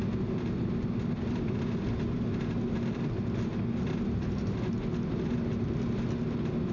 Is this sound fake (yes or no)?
no